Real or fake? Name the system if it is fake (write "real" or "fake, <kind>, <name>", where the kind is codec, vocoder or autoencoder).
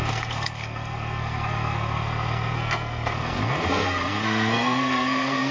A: fake, codec, SNAC